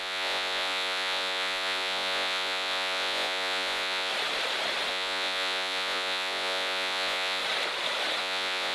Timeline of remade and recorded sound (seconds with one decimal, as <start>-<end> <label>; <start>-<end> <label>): 0.0-4.1 remade; 4.1-4.9 recorded; 4.9-7.4 remade; 7.4-8.2 recorded; 8.2-8.7 remade

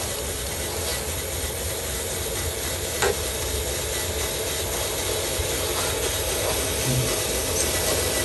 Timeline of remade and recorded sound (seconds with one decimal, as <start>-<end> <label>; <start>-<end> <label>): 0.0-8.2 recorded

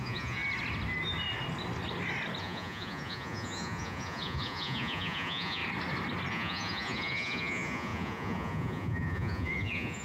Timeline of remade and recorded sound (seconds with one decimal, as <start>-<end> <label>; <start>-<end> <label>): 0.0-0.4 remade; 0.4-2.4 recorded; 2.4-5.6 remade; 5.6-6.3 recorded; 6.3-10.0 remade

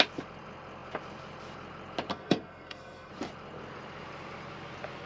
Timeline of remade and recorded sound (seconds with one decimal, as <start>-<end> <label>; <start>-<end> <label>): 0.0-2.1 recorded; 2.1-3.1 remade; 3.1-5.1 recorded

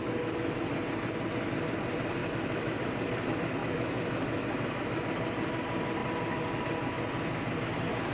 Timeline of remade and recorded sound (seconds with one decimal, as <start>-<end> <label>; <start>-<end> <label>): 0.0-2.2 recorded; 2.2-2.8 remade; 2.8-3.6 recorded; 3.6-5.0 remade; 5.0-8.1 recorded

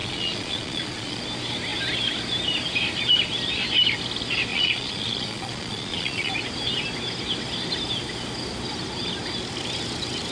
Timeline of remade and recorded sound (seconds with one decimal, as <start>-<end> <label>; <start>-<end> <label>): 0.0-1.2 remade; 1.2-4.5 recorded; 4.5-6.3 remade; 6.3-10.3 recorded

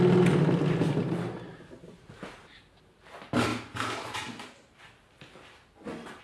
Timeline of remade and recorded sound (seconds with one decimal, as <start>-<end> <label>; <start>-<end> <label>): 0.0-6.2 recorded

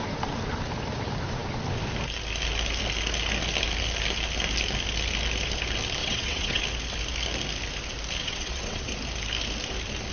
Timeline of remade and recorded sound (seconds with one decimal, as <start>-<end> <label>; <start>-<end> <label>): 0.0-6.0 recorded; 6.0-6.6 remade; 6.6-8.2 recorded; 8.2-8.9 remade; 8.9-10.1 recorded